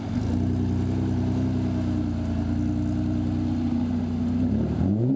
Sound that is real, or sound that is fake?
real